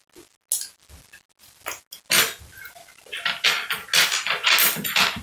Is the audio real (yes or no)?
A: yes